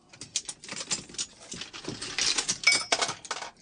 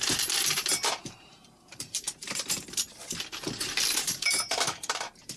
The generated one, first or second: second